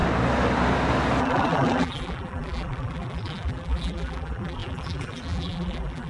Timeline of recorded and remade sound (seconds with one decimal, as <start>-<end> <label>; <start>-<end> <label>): 0.0-1.2 recorded; 1.2-6.1 remade